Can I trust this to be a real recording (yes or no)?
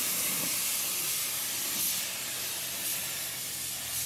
yes